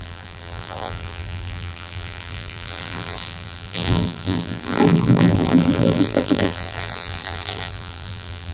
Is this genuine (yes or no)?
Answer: no